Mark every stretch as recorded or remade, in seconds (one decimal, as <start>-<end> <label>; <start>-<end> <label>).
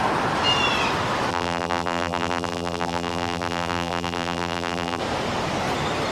0.0-1.3 recorded; 1.3-5.0 remade; 5.0-6.1 recorded